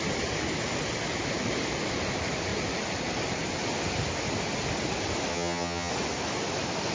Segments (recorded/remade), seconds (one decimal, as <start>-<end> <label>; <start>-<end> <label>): 0.0-5.3 recorded; 5.3-5.9 remade; 5.9-6.9 recorded